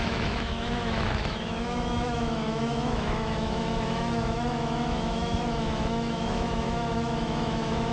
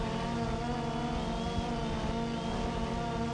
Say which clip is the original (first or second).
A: second